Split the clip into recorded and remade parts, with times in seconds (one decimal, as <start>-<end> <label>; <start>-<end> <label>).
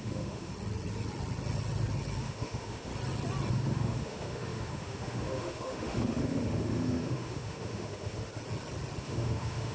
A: 0.0-0.5 remade; 0.5-2.2 recorded; 2.2-2.9 remade; 2.9-3.5 recorded; 3.5-8.3 remade; 8.3-9.0 recorded; 9.0-9.7 remade